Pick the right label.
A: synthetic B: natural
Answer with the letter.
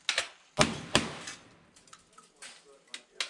B